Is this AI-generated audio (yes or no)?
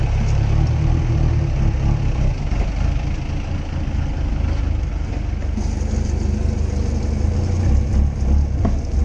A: no